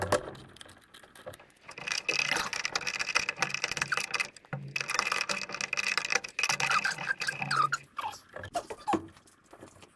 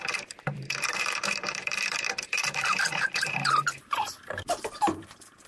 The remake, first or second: second